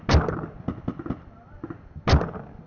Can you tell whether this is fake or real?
real